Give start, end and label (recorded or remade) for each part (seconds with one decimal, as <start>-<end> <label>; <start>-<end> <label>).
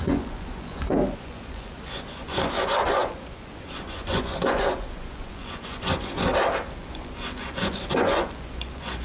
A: 0.0-6.3 remade; 6.3-6.8 recorded; 6.8-9.0 remade